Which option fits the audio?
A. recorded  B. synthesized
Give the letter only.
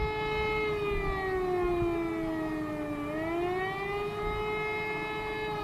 A